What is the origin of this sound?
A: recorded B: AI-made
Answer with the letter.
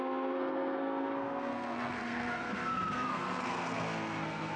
B